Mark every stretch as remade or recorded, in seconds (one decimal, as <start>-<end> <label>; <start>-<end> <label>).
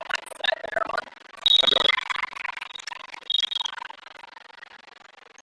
0.0-5.4 recorded